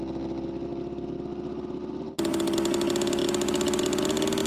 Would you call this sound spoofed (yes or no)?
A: no